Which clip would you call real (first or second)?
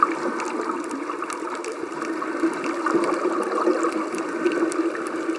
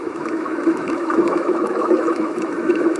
first